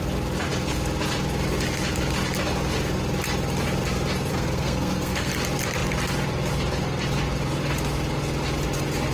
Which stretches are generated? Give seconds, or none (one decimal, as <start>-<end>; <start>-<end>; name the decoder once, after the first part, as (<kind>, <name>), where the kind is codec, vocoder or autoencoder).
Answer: 4.3-5.3 (codec, SNAC)